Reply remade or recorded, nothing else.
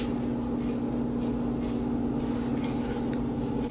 recorded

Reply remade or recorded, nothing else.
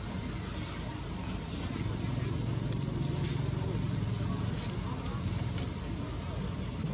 recorded